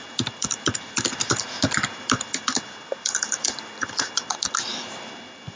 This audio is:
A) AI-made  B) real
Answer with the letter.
A